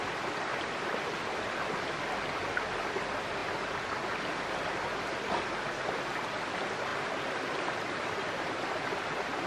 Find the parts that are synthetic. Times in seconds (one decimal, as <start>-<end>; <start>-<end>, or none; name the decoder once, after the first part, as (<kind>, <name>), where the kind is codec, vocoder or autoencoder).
0.0-3.4 (vocoder, BigVGAN v2); 5.0-9.5

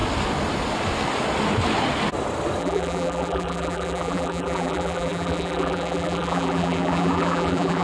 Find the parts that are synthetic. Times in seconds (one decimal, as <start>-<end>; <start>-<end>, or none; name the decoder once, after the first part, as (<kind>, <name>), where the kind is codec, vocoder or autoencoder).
2.6-7.8 (vocoder, BigVGAN v2)